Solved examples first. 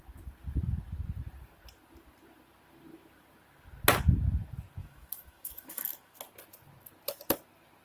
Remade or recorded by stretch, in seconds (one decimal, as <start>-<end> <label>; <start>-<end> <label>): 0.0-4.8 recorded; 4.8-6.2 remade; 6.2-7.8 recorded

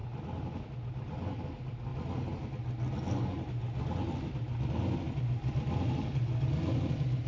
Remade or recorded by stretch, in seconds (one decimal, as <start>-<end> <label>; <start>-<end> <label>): 0.0-7.3 recorded

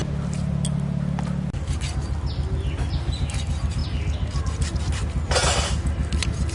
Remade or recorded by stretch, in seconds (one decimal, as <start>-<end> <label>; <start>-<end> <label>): 0.0-6.5 recorded

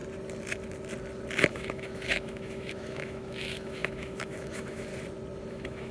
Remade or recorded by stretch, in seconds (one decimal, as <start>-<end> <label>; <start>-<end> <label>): 0.0-1.5 recorded; 1.5-4.9 remade; 4.9-5.5 recorded; 5.5-5.9 remade